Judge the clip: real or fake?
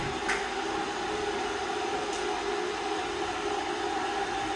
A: real